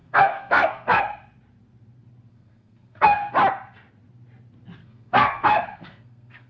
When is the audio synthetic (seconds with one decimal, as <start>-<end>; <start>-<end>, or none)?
0.0-1.0; 2.3-3.3; 4.8-6.5

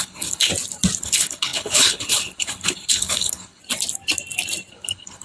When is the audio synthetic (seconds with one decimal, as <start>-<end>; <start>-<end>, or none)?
0.0-0.5; 1.0-3.6; 4.7-5.2

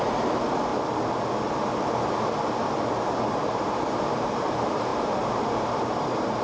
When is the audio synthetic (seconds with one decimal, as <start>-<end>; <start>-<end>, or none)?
0.0-0.7; 3.1-6.4

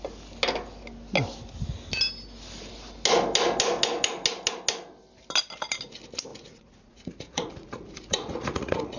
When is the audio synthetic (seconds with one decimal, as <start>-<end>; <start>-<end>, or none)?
6.3-9.0

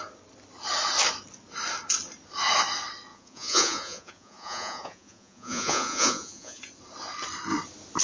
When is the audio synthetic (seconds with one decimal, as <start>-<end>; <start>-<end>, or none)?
3.1-6.6

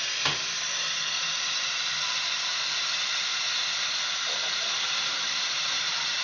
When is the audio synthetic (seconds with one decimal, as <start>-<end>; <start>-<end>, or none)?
0.0-3.3; 4.1-6.2

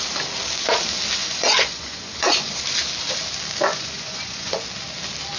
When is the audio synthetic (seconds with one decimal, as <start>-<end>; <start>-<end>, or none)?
1.2-2.6; 3.7-4.6